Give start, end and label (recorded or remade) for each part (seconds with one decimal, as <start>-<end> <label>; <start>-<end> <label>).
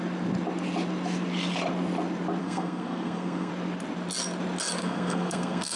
0.0-2.4 recorded; 2.4-3.5 remade; 3.5-4.8 recorded; 4.8-5.8 remade